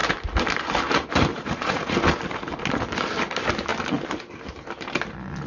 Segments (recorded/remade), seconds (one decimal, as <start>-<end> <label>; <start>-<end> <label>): 0.0-1.3 recorded; 1.3-2.2 remade; 2.2-5.5 recorded